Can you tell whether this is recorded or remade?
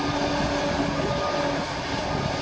recorded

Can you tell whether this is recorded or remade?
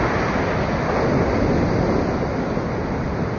recorded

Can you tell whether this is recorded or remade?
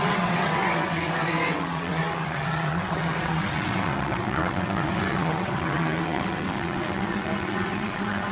remade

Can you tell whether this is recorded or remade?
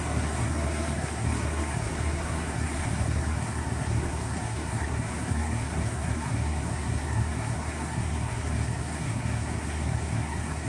remade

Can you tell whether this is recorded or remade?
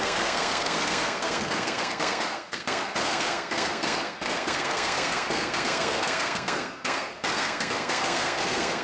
remade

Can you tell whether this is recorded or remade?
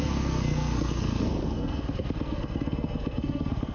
remade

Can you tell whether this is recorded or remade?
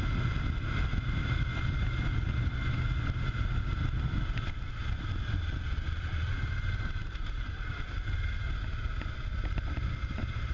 recorded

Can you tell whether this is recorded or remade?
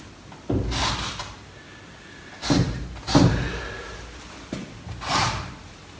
recorded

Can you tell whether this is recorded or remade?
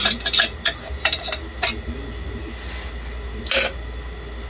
recorded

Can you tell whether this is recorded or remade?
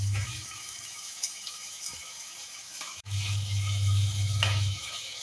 remade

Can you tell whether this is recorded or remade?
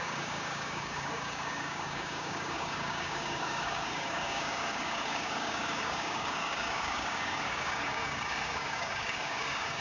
remade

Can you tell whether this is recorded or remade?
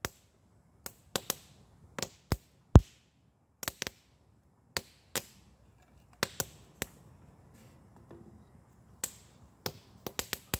recorded